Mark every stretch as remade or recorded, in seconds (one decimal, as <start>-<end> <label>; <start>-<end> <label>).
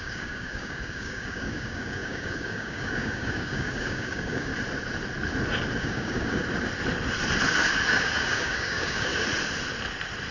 0.0-4.5 remade; 4.5-5.8 recorded; 5.8-6.4 remade; 6.4-7.9 recorded; 7.9-9.1 remade; 9.1-10.3 recorded